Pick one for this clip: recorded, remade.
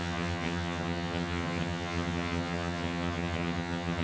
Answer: remade